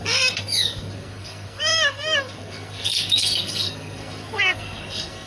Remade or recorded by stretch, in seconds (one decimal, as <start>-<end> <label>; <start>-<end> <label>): 0.0-5.3 remade